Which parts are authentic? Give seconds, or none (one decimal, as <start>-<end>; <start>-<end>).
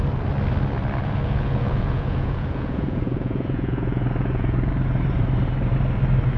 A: 0.0-1.0; 4.7-6.4